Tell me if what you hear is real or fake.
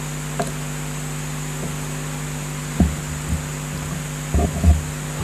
real